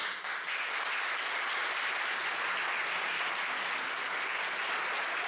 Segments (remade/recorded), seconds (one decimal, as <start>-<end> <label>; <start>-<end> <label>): 0.0-5.3 recorded